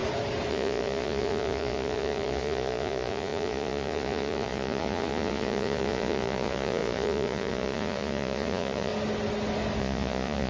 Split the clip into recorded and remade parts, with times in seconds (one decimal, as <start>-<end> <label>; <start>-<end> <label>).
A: 0.0-0.5 recorded; 0.5-8.9 remade; 8.9-9.8 recorded; 9.8-10.5 remade